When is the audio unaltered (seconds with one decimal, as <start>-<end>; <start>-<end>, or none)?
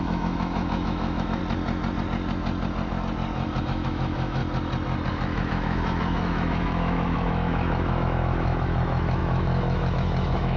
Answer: 1.4-3.6; 4.4-5.1